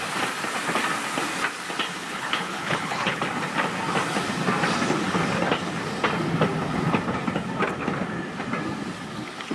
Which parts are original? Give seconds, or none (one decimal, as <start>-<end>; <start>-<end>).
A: 0.0-2.0; 3.2-9.5